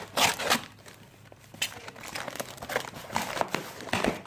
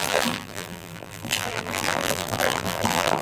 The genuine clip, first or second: first